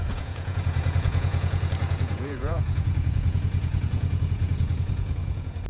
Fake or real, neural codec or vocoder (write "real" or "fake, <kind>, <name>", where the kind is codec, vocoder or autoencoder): fake, vocoder, Vocos